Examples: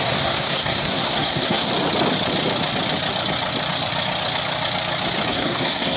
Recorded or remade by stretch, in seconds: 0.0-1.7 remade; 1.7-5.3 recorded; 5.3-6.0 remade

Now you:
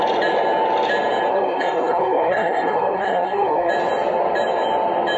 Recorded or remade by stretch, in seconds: 0.0-1.3 recorded; 1.3-3.7 remade; 3.7-5.2 recorded

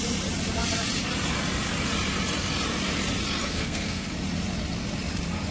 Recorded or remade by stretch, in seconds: 0.0-3.4 recorded; 3.4-4.1 remade; 4.1-5.5 recorded